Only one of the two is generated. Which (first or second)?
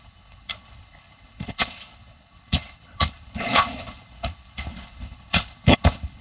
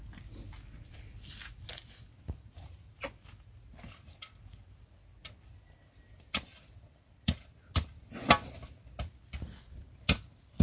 first